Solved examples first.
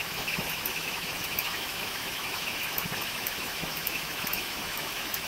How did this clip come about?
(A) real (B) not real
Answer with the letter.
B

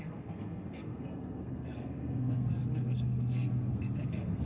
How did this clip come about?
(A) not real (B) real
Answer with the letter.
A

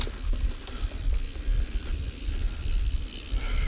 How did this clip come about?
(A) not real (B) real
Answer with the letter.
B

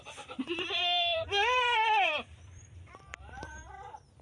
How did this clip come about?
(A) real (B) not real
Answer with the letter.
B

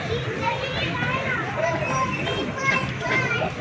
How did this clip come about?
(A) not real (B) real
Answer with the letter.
A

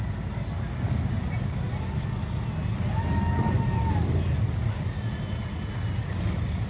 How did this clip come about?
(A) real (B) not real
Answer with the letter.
A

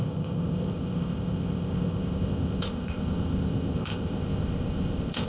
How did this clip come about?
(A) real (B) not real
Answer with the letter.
B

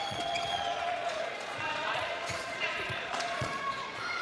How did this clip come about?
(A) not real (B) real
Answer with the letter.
A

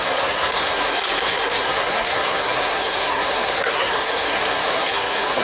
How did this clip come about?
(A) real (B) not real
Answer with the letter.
B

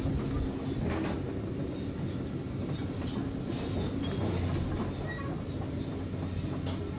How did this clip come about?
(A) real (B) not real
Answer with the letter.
A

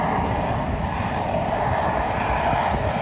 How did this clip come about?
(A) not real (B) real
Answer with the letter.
B